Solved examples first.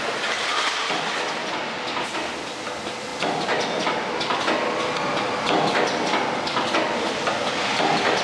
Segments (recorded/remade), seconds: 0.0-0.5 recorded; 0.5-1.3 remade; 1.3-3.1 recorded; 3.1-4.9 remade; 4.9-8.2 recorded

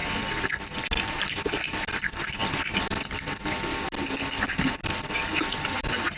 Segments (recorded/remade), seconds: 0.0-6.2 recorded

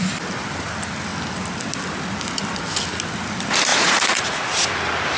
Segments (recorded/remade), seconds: 0.0-3.7 recorded; 3.7-4.5 remade; 4.5-5.2 recorded

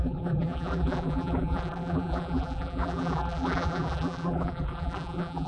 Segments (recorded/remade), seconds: 0.0-5.5 remade

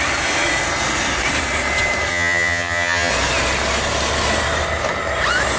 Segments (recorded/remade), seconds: 0.0-2.1 recorded; 2.1-3.1 remade; 3.1-5.6 recorded

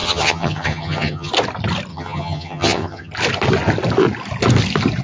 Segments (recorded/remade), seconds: 0.0-1.3 remade; 1.3-1.9 recorded; 1.9-3.1 remade; 3.1-5.0 recorded

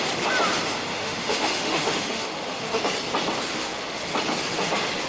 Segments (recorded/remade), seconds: 0.0-0.9 recorded; 0.9-2.8 remade; 2.8-3.5 recorded; 3.5-4.0 remade; 4.0-5.1 recorded

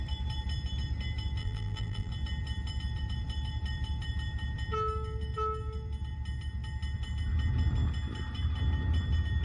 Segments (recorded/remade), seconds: 0.0-1.4 recorded; 1.4-2.1 remade; 2.1-9.4 recorded